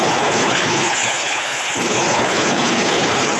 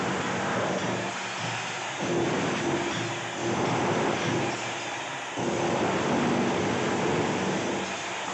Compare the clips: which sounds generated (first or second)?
first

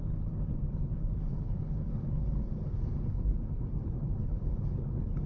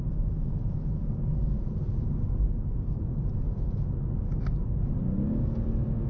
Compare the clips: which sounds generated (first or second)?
first